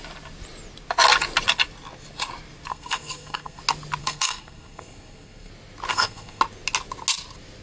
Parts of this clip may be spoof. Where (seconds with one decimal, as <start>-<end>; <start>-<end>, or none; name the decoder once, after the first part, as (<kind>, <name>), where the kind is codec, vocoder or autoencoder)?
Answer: 2.7-3.6 (codec, SNAC); 4.0-5.5; 5.9-6.4